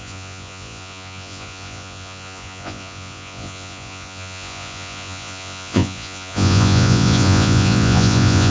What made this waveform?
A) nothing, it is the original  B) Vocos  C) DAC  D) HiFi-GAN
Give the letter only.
B